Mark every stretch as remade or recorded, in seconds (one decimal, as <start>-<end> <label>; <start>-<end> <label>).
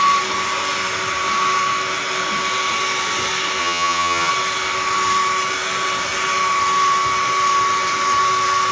0.0-3.6 recorded; 3.6-4.3 remade; 4.3-8.7 recorded